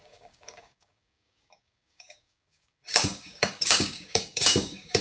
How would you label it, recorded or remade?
remade